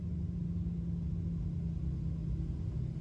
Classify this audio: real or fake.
real